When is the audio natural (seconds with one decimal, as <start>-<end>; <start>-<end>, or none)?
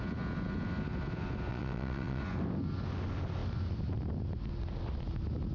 0.0-1.5; 2.2-5.5